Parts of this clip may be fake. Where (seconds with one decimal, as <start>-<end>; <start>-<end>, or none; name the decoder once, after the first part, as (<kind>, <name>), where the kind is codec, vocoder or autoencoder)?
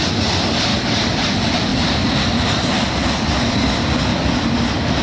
none